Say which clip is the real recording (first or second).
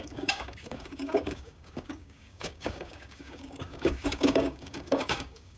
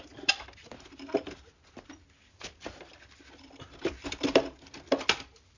second